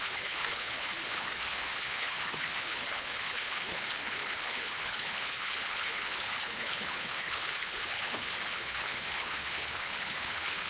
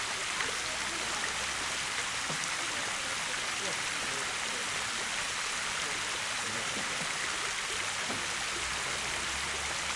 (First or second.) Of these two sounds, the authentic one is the second